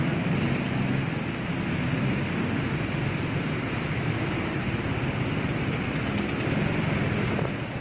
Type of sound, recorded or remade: recorded